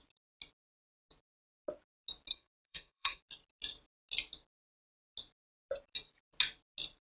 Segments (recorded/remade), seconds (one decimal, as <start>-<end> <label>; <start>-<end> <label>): 0.0-2.3 recorded; 2.3-3.2 remade; 3.2-7.0 recorded